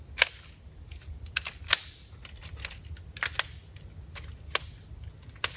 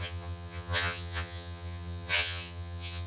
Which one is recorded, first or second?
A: first